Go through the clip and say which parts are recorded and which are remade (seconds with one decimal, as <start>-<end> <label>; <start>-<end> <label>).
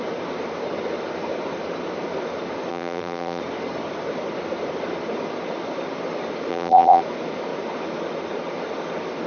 0.0-2.7 recorded; 2.7-3.4 remade; 3.4-6.5 recorded; 6.5-7.0 remade; 7.0-9.3 recorded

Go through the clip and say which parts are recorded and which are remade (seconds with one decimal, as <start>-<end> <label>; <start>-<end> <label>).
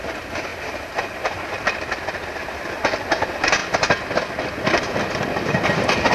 0.0-6.1 recorded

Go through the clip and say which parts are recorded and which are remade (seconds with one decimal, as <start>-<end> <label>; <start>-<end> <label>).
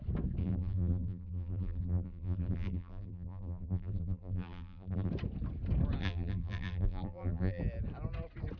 0.0-0.4 recorded; 0.4-5.1 remade; 5.1-6.0 recorded; 6.0-7.6 remade; 7.6-8.6 recorded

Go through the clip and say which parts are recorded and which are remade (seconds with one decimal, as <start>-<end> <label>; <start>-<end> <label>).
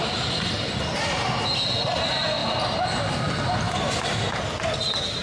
0.0-0.8 remade; 0.8-5.2 recorded